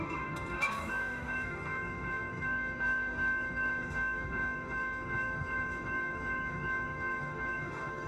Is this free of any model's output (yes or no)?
no